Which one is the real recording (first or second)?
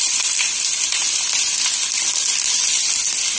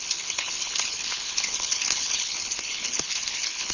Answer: first